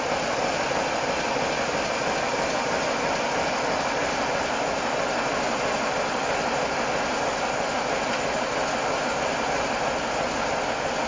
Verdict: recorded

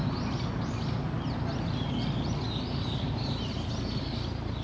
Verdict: recorded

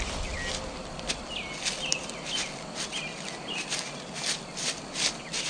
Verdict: recorded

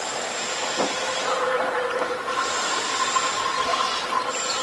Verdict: recorded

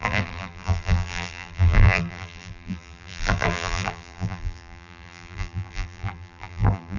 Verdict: remade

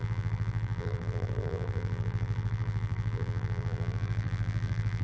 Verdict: remade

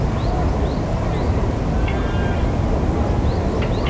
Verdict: recorded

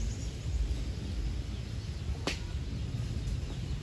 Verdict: recorded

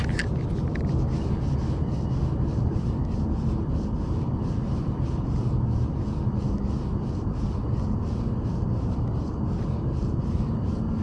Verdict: recorded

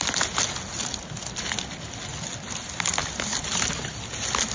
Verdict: recorded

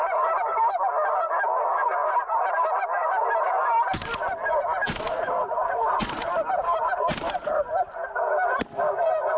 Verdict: recorded